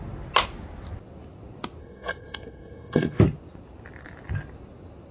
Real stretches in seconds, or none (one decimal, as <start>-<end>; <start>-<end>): 0.0-1.8; 3.2-5.1